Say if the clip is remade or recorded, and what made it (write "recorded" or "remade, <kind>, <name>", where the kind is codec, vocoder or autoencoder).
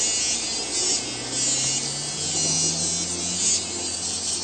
recorded